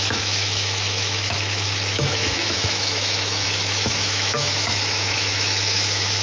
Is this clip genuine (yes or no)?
no